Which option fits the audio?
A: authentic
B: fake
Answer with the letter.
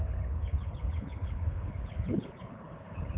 B